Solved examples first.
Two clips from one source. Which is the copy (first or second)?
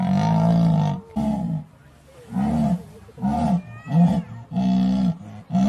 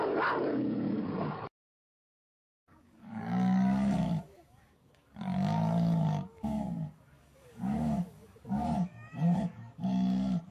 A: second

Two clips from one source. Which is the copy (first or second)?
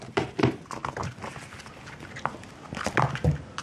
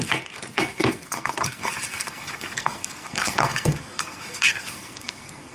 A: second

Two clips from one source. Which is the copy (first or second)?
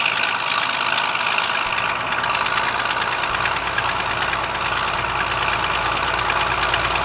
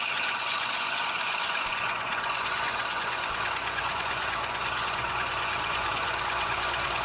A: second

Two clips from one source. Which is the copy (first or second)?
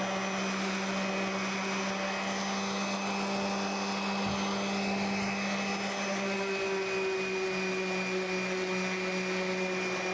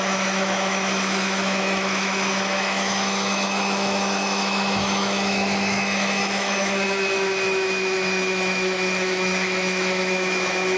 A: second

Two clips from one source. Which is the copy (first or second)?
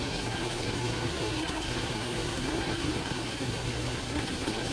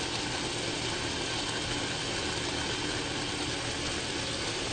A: first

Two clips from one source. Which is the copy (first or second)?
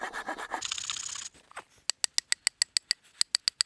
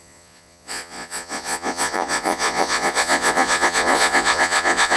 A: second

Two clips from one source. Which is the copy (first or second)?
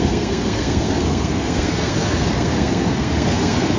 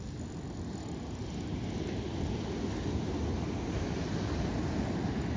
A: first